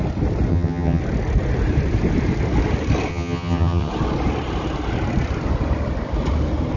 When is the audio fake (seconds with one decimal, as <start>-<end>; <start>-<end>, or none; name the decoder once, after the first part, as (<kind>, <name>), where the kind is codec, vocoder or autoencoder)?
0.5-1.0 (vocoder, HiFi-GAN); 3.1-3.9